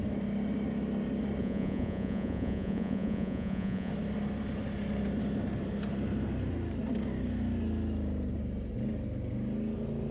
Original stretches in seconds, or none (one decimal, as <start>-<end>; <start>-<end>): 0.0-1.4; 3.9-10.1